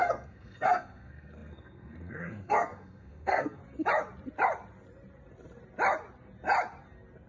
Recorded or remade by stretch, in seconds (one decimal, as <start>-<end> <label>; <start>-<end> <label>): 0.0-3.6 remade; 3.6-7.3 recorded